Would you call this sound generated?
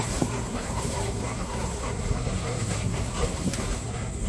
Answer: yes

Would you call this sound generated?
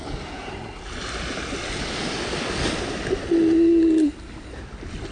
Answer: no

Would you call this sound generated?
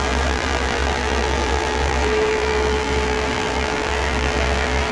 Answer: yes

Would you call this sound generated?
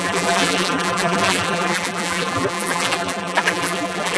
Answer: yes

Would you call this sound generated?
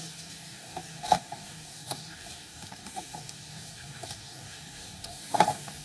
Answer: yes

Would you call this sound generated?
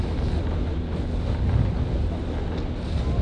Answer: no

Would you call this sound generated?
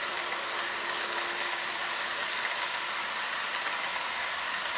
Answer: no